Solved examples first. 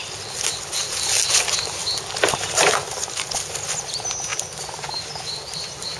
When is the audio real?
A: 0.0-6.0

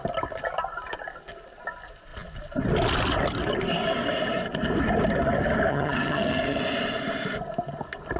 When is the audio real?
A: 0.0-5.7; 6.6-8.2

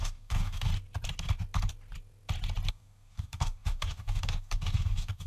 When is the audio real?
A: 0.7-2.7

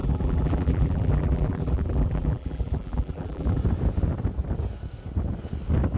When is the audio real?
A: 3.6-6.0

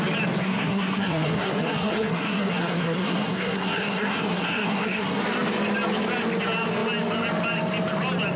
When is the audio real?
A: 0.0-0.4; 5.2-8.4